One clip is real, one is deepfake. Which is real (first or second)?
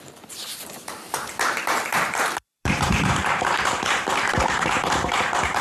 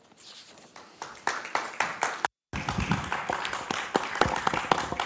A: second